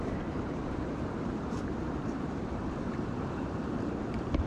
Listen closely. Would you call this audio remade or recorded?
remade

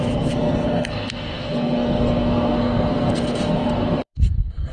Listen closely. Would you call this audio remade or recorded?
remade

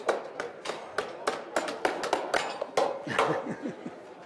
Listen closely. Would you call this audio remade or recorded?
recorded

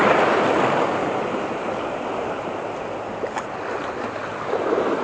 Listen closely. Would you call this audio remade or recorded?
recorded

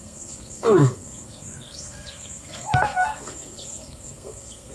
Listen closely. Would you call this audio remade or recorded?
remade